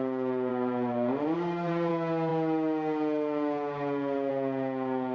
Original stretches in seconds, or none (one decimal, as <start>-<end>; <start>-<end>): 0.0-0.5; 1.9-5.1